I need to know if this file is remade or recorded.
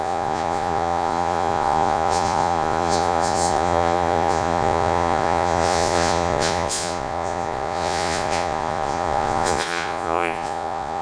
remade